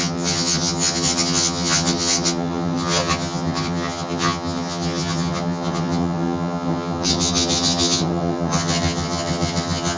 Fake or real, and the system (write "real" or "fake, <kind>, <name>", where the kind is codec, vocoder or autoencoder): fake, vocoder, HiFi-GAN